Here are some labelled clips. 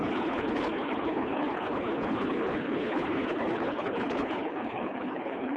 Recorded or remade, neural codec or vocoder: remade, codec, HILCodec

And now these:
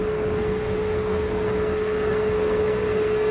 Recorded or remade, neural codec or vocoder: remade, codec, SNAC